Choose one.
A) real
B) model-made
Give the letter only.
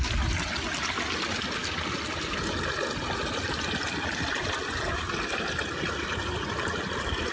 A